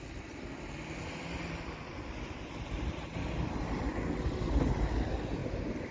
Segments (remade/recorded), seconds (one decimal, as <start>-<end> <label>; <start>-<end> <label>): 0.0-5.9 recorded